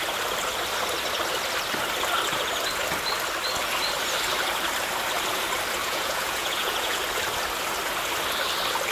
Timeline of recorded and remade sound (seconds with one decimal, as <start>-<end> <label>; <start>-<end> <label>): 0.0-5.8 recorded; 5.8-7.0 remade; 7.0-8.9 recorded